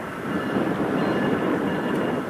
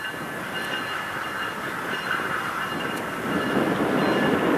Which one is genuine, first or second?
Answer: second